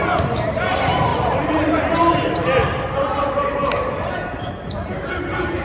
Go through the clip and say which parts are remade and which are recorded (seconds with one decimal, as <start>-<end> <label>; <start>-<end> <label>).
0.0-5.6 remade